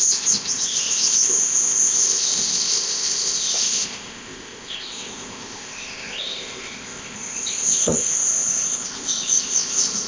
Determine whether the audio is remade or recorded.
remade